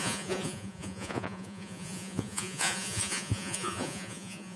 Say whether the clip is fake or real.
fake